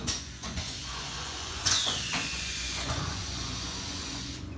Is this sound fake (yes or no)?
yes